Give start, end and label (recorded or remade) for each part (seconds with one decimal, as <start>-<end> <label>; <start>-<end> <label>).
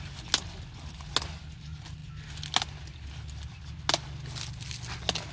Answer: 0.0-5.3 recorded